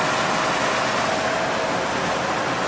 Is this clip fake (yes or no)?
no